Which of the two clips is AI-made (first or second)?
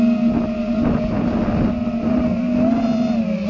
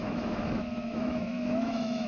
second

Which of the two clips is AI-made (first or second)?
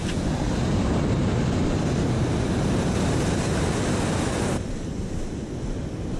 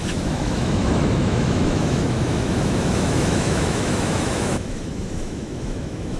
second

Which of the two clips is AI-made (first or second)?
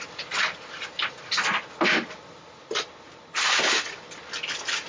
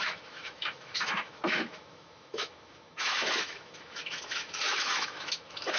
second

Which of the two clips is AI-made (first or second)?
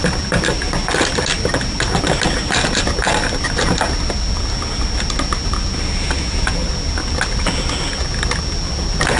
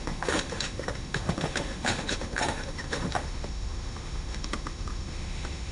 second